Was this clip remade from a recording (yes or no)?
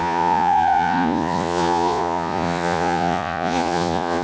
yes